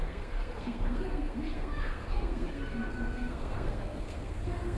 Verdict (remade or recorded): remade